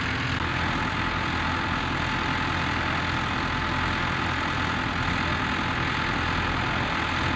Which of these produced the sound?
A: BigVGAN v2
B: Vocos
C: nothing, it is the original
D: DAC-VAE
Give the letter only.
C